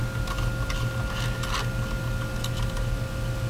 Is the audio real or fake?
real